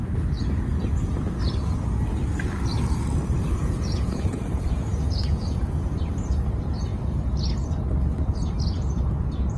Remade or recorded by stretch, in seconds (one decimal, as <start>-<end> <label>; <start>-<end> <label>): 0.0-3.6 recorded; 3.6-5.7 remade; 5.7-9.6 recorded